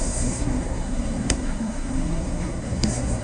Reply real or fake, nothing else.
fake